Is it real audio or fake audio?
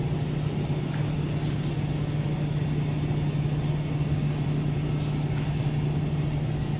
real